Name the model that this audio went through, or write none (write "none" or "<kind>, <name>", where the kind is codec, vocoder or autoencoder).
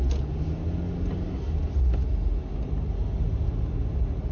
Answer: none